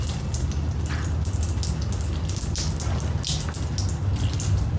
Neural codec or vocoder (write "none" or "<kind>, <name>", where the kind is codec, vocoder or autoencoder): none